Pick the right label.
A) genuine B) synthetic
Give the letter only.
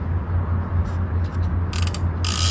A